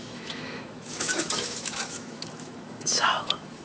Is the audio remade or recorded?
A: remade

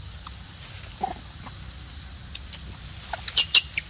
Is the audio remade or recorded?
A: recorded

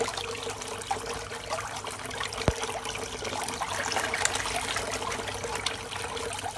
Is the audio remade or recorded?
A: recorded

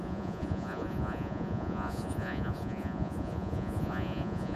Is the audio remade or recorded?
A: remade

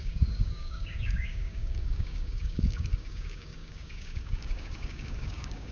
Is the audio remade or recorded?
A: remade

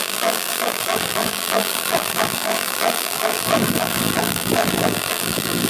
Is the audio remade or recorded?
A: remade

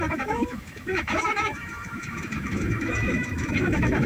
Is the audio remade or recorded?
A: remade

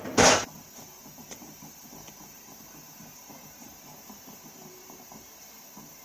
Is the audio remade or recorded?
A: remade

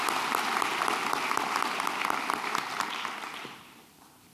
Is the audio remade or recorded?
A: remade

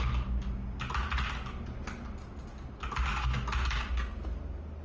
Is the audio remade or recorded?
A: recorded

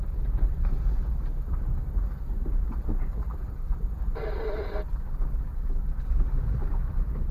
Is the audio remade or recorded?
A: remade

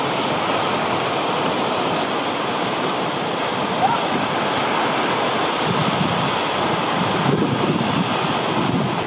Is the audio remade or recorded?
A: recorded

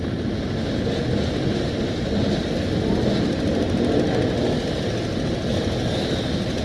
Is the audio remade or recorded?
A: recorded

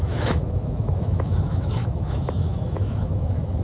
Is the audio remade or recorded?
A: remade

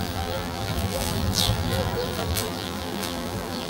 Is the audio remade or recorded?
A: remade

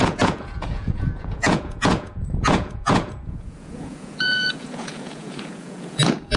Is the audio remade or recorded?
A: remade